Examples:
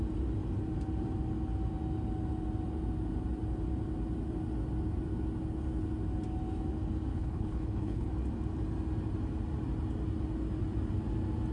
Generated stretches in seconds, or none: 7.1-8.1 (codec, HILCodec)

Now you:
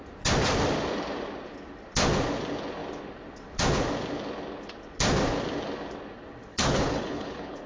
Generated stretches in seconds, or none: 6.5-7.7 (codec, HILCodec)